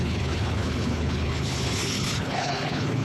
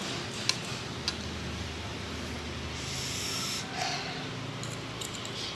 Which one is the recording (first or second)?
second